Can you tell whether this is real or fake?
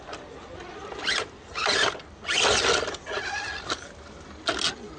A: real